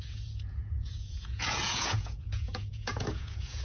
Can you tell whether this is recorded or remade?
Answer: remade